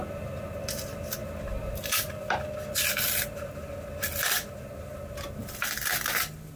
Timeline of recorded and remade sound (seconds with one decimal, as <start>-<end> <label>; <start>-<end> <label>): 0.0-6.6 recorded